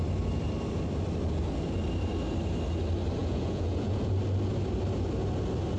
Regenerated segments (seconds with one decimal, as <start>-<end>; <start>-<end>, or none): 3.2-4.1

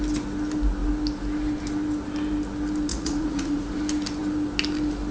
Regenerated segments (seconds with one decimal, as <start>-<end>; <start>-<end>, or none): 2.9-3.8

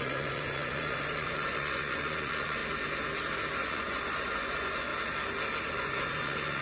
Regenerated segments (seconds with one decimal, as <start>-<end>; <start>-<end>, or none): 0.0-2.6; 3.7-4.9; 5.7-6.6

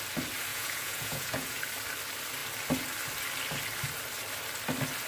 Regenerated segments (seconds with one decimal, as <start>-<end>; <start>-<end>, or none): 0.5-1.6

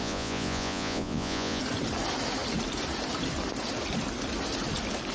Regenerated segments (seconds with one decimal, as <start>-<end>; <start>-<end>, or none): 0.0-1.6